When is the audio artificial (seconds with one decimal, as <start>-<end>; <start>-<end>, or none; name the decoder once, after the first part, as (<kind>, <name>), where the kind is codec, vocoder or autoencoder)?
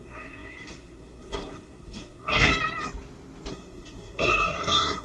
0.0-2.5 (codec, SNAC); 3.5-5.0